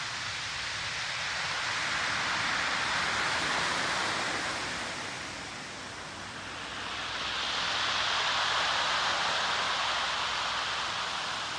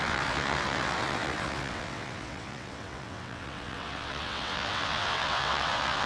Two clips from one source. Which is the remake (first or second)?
second